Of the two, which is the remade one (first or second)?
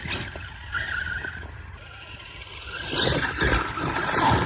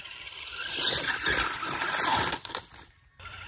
second